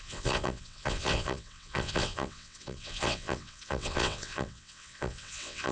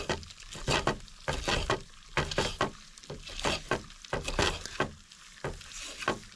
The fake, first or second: first